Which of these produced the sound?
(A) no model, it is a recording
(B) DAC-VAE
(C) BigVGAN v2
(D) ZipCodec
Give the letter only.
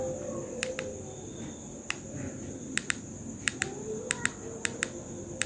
A